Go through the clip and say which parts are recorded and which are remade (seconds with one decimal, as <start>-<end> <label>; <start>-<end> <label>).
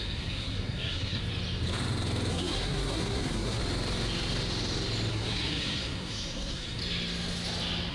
0.0-1.2 remade; 1.2-2.3 recorded; 2.3-3.6 remade; 3.6-5.1 recorded; 5.1-6.8 remade; 6.8-7.9 recorded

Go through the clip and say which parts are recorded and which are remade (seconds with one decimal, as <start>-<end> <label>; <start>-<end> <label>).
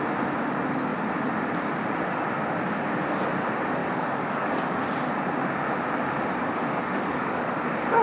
0.0-3.8 recorded; 3.8-4.8 remade; 4.8-6.4 recorded; 6.4-7.5 remade; 7.5-8.0 recorded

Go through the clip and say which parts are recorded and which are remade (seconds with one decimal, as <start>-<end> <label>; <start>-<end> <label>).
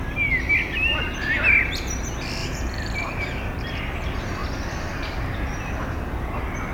0.0-2.4 recorded; 2.4-3.8 remade; 3.8-4.4 recorded; 4.4-5.8 remade; 5.8-6.7 recorded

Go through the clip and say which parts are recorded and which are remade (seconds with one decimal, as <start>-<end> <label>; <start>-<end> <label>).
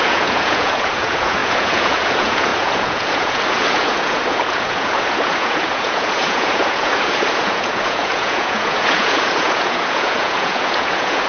0.0-11.3 remade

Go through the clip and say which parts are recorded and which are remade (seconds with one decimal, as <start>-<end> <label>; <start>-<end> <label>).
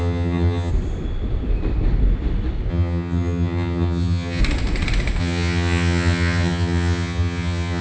0.0-0.7 remade; 0.7-2.7 recorded; 2.7-4.4 remade; 4.4-5.2 recorded; 5.2-7.8 remade